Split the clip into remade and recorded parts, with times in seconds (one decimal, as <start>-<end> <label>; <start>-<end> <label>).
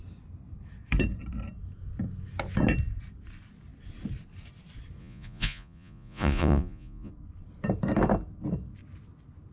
0.0-5.0 recorded; 5.0-7.1 remade; 7.1-9.5 recorded